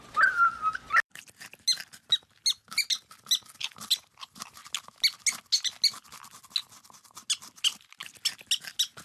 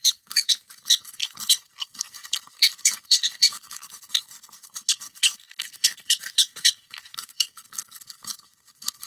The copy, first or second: second